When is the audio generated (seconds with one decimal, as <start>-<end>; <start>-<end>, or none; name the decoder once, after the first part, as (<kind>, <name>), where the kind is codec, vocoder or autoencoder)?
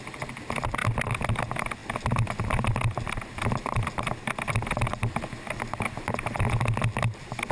none